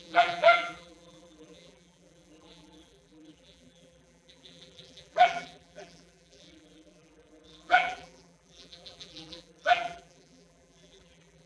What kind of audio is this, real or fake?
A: fake